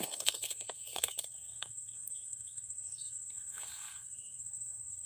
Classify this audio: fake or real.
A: fake